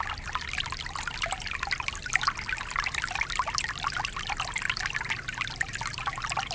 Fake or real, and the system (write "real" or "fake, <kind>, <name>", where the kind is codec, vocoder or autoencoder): real